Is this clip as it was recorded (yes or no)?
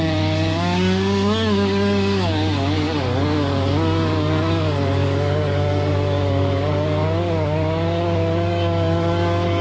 no